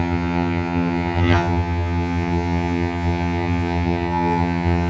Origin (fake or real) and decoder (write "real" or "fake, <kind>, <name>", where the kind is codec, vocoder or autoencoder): fake, vocoder, HiFi-GAN